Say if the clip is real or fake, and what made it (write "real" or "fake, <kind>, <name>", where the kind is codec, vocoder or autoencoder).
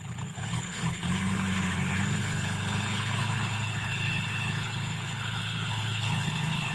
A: fake, codec, HILCodec